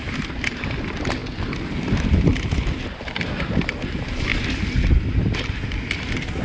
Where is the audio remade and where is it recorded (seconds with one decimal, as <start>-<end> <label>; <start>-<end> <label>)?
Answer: 0.0-4.3 remade; 4.3-6.4 recorded